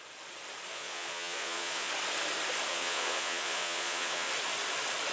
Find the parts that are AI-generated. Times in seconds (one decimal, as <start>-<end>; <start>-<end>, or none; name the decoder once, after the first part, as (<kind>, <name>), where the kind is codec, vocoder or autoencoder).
0.7-1.9 (vocoder, Vocos); 2.7-4.3